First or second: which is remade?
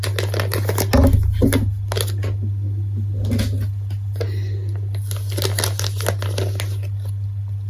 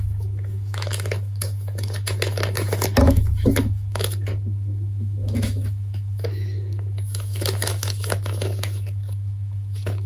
second